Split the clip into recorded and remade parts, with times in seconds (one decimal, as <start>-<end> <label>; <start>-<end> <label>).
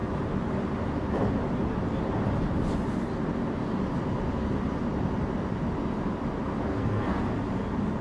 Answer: 0.0-6.7 recorded; 6.7-7.2 remade; 7.2-8.0 recorded